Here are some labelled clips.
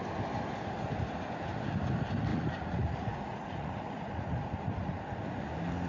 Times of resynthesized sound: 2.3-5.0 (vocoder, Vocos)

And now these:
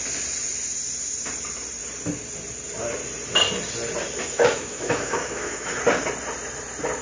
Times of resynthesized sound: 4.2-5.8 (autoencoder, DAC-VAE)

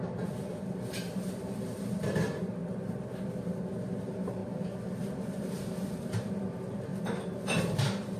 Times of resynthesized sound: 0.0-2.6 (vocoder, BigVGAN v2); 4.0-4.4; 5.4-6.9; 7.6-8.2

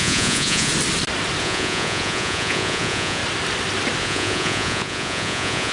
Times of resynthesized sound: 0.0-0.7 (vocoder, Vocos); 1.4-3.2; 4.0-5.7

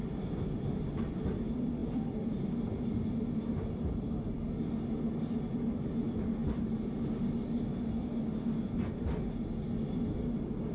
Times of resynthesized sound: 1.8-2.6 (vocoder, BigVGAN v2)

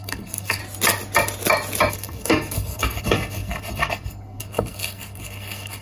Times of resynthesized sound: 0.0-0.6 (codec, SNAC); 1.9-5.8

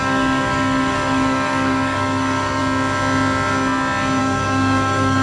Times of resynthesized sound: 0.0-2.6 (codec, DAC); 4.2-5.2